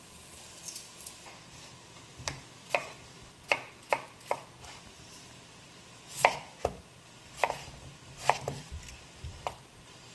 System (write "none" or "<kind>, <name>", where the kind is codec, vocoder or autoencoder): vocoder, BigVGAN v2